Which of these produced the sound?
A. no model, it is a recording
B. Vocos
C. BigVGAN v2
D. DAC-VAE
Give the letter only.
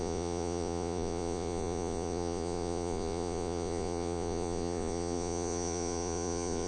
B